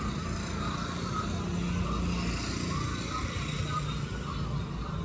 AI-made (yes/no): no